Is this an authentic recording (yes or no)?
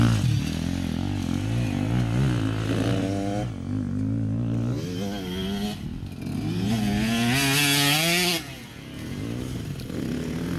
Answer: yes